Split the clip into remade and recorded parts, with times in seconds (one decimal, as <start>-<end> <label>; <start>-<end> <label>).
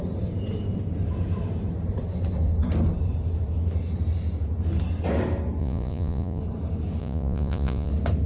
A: 0.0-5.6 recorded; 5.6-6.4 remade; 6.4-7.0 recorded; 7.0-7.9 remade; 7.9-8.3 recorded